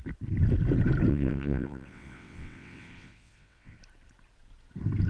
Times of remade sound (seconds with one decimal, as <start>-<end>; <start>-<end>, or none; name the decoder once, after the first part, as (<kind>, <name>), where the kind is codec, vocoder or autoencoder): 1.1-3.8 (vocoder, WaveNeXt)